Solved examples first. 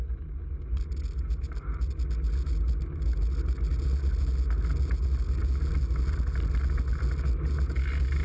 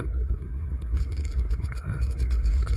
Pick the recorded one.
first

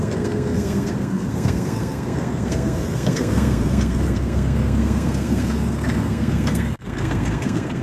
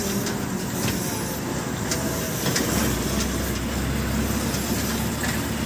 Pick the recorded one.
second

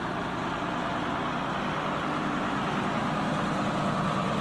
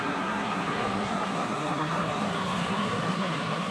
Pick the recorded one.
first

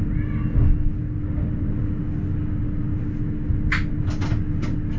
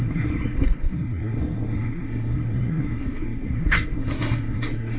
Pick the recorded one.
first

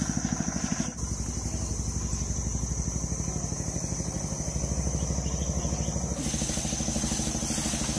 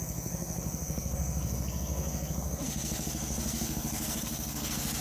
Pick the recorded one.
first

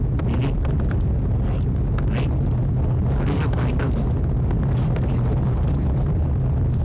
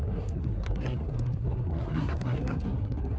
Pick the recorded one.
first